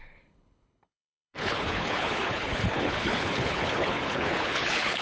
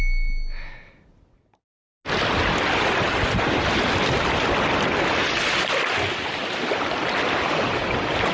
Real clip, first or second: second